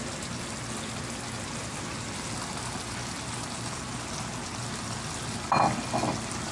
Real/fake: real